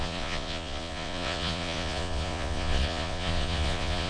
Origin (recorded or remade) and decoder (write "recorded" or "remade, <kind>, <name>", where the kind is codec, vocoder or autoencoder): remade, vocoder, Vocos